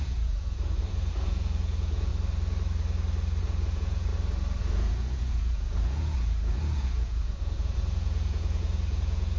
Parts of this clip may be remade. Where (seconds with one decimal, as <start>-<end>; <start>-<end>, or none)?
0.0-2.1; 3.4-4.1; 4.6-9.4